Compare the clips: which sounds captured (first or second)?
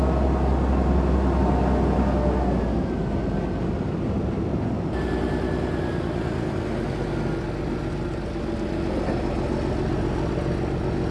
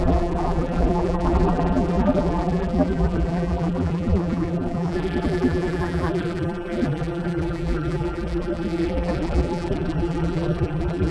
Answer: first